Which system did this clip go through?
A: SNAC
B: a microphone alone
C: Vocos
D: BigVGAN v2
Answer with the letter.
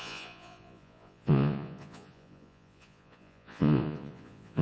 C